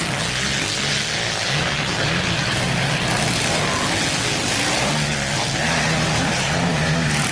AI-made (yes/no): no